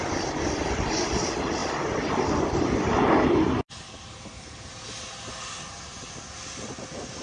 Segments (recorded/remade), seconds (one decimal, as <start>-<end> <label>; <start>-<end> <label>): 0.0-7.2 recorded

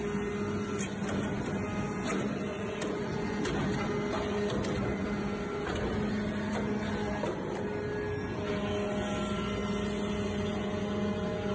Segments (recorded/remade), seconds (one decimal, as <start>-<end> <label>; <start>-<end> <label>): 0.0-2.5 recorded; 2.5-3.4 remade; 3.4-11.5 recorded

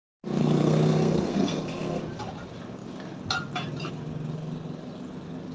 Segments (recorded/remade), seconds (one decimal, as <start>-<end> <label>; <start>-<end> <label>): 0.0-0.4 recorded; 0.4-2.0 remade; 2.0-5.5 recorded

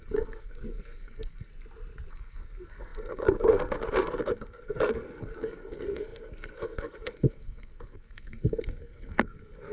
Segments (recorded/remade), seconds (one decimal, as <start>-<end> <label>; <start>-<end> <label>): 0.0-1.5 remade; 1.5-2.1 recorded; 2.1-9.7 remade

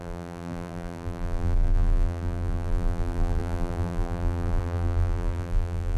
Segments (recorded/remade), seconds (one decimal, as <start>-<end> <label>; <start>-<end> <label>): 0.0-6.0 remade

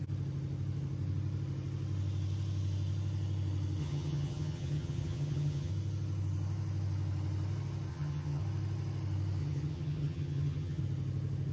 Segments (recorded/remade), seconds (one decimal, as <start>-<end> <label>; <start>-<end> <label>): 0.0-3.8 recorded; 3.8-5.7 remade; 5.7-7.9 recorded; 7.9-8.4 remade; 8.4-9.4 recorded; 9.4-10.8 remade; 10.8-11.5 recorded

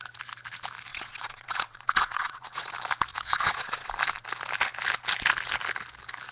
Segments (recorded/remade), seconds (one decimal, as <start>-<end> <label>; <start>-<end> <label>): 0.0-0.9 recorded; 0.9-2.7 remade; 2.7-3.1 recorded; 3.1-3.9 remade; 3.9-6.3 recorded

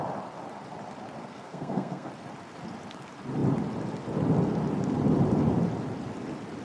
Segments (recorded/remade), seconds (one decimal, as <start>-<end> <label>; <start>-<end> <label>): 0.0-1.2 recorded; 1.2-2.1 remade; 2.1-6.6 recorded